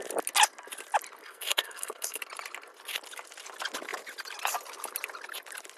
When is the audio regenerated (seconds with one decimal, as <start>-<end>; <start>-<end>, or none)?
1.2-2.2